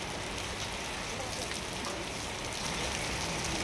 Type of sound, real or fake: real